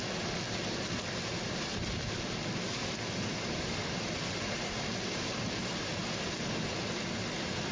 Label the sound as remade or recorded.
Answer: recorded